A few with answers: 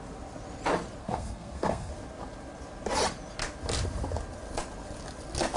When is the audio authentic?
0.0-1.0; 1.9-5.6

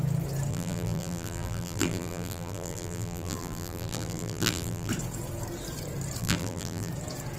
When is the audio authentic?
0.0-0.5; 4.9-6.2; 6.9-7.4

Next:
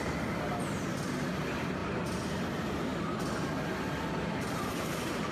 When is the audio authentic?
0.0-5.3

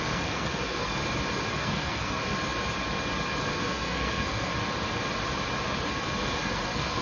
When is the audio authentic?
1.0-1.5; 2.2-3.4; 4.5-5.9

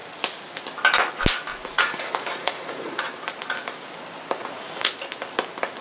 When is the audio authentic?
0.0-1.5; 3.0-4.4; 4.9-5.8

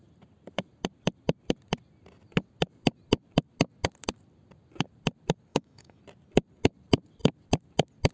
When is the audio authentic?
0.0-5.5; 6.0-8.1

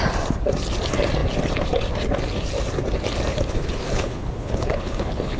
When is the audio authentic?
0.0-3.3

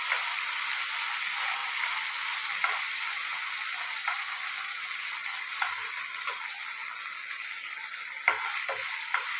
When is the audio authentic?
0.0-9.4